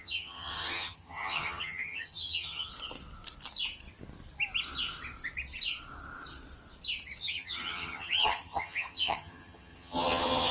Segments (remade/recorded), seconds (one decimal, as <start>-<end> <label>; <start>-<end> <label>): 0.0-2.7 remade; 2.7-7.2 recorded; 7.2-10.5 remade